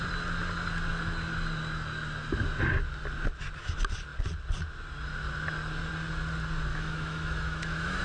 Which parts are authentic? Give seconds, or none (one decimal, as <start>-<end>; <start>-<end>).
0.0-6.7